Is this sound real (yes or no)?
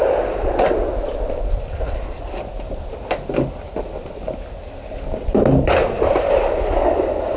yes